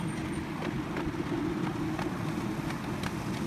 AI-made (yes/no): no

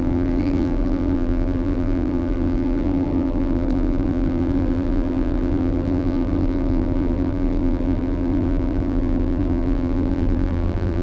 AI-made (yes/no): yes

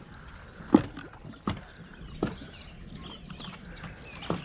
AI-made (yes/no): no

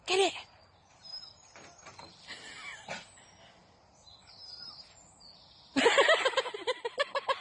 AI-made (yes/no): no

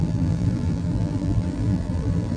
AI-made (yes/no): yes